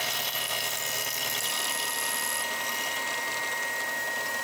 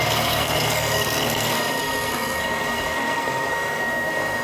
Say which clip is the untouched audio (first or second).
first